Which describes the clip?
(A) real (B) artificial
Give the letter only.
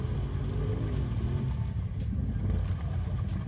A